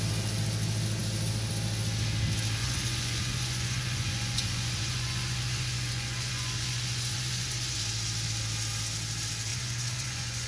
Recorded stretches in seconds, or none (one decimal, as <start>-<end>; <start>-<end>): 0.0-2.6; 7.8-9.5